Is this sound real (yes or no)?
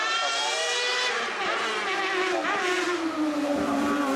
no